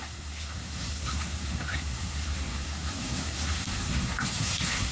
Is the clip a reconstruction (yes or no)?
yes